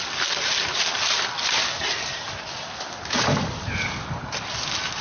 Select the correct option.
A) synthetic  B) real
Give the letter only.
B